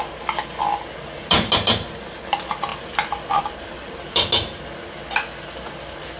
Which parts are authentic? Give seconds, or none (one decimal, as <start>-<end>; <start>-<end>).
0.0-6.2